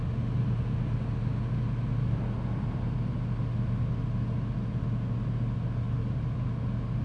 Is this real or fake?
real